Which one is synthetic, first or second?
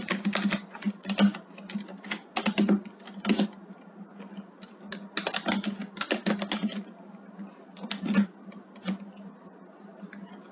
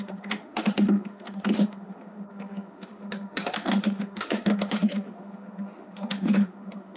second